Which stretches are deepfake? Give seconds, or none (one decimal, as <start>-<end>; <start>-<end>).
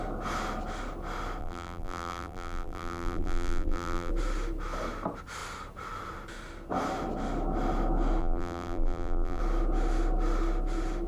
1.4-4.1; 8.2-9.4